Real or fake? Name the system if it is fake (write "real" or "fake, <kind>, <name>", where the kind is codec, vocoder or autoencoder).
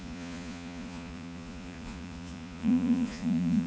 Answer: fake, vocoder, Vocos